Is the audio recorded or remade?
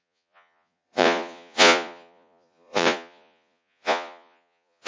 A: remade